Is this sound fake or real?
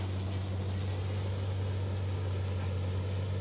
real